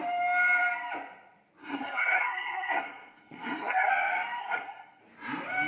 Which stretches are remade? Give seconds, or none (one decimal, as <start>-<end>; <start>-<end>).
1.6-3.9; 4.4-5.0